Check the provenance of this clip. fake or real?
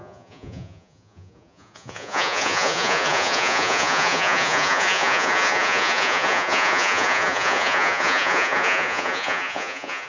fake